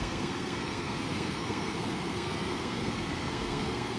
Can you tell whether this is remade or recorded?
remade